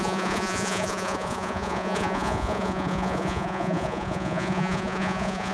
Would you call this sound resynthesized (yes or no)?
yes